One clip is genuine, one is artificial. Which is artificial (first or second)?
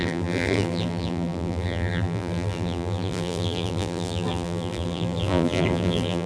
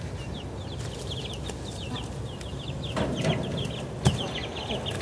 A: first